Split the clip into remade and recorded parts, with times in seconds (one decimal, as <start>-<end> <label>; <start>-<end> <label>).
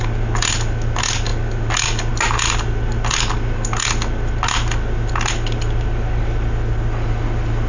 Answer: 0.0-7.7 recorded